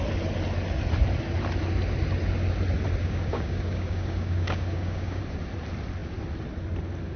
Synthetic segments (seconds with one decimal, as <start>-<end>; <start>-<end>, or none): 3.0-5.2